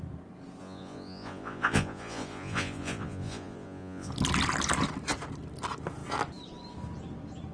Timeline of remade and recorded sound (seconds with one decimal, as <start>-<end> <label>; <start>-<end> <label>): 0.0-0.6 recorded; 0.6-4.1 remade; 4.1-7.5 recorded